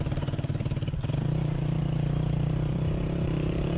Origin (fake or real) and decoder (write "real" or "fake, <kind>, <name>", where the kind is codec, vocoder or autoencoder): fake, vocoder, BigVGAN v2